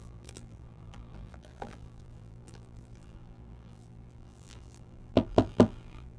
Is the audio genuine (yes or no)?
no